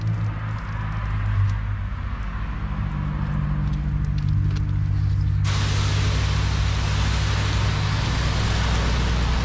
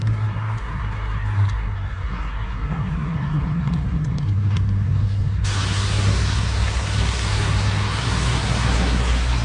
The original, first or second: first